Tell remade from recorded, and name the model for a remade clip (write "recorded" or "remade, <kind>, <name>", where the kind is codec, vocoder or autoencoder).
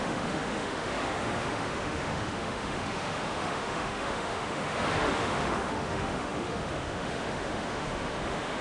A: remade, autoencoder, DAC-VAE